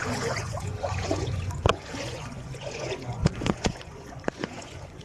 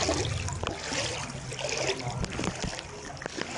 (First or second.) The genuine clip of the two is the second